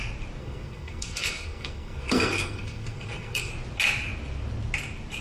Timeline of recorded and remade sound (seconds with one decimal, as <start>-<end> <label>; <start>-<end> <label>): 0.0-0.4 recorded; 0.4-3.5 remade; 3.5-5.2 recorded